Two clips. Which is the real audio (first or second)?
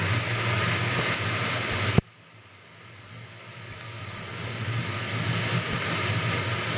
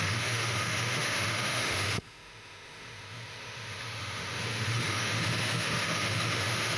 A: first